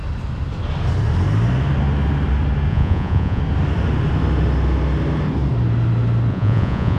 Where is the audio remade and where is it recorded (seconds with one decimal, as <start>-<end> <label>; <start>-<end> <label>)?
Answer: 0.0-2.7 recorded; 2.7-3.4 remade; 3.4-6.3 recorded; 6.3-7.0 remade

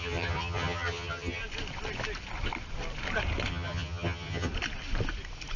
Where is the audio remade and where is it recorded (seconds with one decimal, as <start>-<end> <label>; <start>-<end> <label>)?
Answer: 0.0-1.4 remade; 1.4-3.5 recorded; 3.5-4.5 remade; 4.5-5.6 recorded

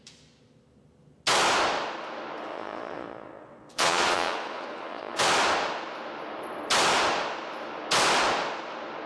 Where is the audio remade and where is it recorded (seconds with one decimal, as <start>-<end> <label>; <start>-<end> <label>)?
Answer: 0.0-2.5 recorded; 2.5-5.2 remade; 5.2-9.1 recorded

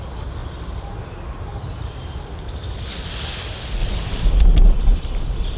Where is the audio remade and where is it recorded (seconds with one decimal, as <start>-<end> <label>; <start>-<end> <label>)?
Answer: 0.0-0.4 recorded; 0.4-1.4 remade; 1.4-3.8 recorded; 3.8-4.4 remade; 4.4-5.6 recorded